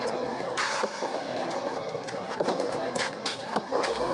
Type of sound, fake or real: fake